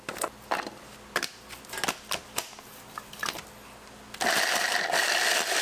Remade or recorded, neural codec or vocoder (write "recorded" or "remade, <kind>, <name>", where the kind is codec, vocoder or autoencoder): recorded